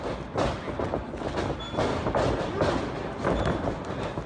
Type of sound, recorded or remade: recorded